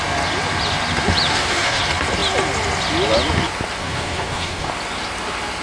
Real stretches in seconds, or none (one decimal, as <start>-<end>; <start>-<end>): 0.0-1.3; 1.8-3.8; 4.7-5.6